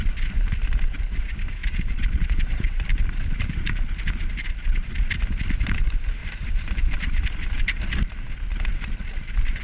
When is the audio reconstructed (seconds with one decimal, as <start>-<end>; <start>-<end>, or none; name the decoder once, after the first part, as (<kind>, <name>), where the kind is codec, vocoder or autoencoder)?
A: 1.6-5.0 (vocoder, BigVGAN v2); 6.2-8.0